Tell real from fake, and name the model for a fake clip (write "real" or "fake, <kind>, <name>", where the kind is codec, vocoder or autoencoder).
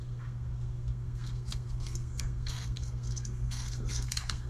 fake, codec, SNAC